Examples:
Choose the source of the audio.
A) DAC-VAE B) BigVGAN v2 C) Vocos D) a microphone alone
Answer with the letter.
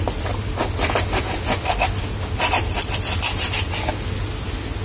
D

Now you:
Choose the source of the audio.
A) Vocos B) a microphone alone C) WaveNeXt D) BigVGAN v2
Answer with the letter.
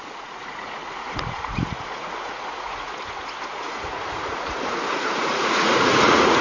A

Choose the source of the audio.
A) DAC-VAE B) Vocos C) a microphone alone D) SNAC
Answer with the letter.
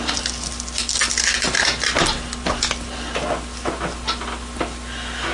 C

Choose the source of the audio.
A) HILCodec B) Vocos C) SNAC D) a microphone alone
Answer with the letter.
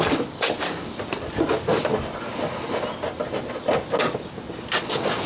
D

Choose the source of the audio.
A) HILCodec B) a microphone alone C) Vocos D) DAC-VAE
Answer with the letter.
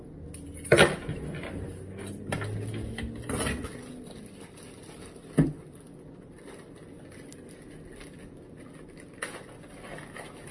B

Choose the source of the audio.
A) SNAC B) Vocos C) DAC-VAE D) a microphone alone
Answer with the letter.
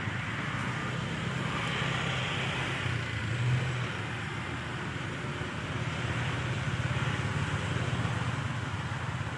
D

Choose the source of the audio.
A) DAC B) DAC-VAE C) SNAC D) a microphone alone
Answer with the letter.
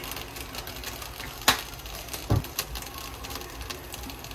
D